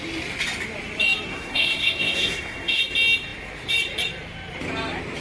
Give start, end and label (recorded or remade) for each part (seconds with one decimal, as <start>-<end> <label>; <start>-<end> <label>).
0.0-1.3 recorded; 1.3-2.8 remade; 2.8-5.2 recorded